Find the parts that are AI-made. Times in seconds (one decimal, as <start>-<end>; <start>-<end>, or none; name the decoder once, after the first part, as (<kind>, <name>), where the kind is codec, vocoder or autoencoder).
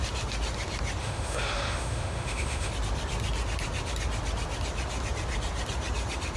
1.0-2.7 (autoencoder, DAC-VAE)